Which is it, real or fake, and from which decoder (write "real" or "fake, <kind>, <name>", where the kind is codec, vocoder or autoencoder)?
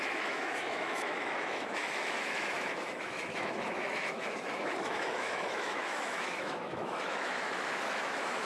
fake, autoencoder, DAC-VAE